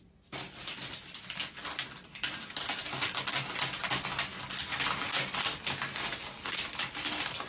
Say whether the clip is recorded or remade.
recorded